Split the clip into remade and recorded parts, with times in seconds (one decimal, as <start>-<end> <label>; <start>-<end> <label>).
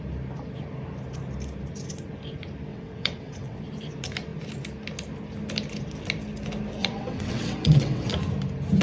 0.0-2.7 recorded; 2.7-3.6 remade; 3.6-6.8 recorded; 6.8-8.1 remade; 8.1-8.8 recorded